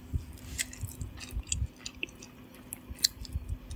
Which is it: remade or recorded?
recorded